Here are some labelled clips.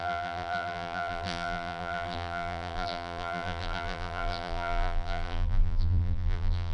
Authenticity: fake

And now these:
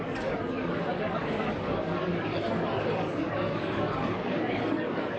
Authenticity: fake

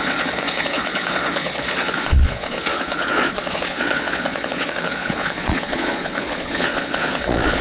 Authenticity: fake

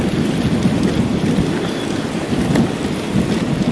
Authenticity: real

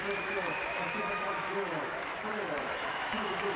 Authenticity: fake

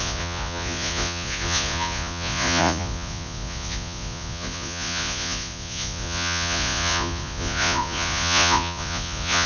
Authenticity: fake